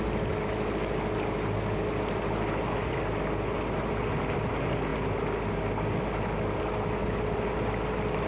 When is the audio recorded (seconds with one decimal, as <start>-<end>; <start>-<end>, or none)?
0.0-8.3